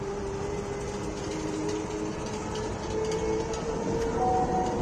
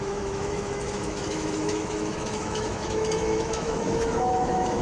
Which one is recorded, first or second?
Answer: first